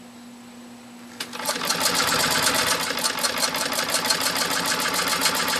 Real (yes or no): yes